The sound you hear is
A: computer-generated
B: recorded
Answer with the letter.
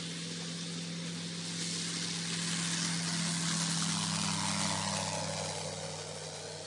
B